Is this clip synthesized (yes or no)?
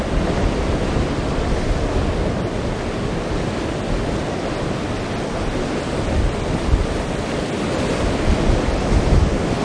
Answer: no